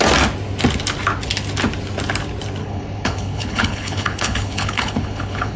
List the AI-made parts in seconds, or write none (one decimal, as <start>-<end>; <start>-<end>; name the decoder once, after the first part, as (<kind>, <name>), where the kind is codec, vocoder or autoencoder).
2.6-5.6 (codec, HILCodec)